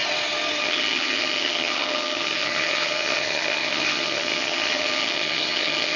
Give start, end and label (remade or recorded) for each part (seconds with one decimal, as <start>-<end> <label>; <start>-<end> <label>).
0.0-0.6 recorded; 0.6-6.0 remade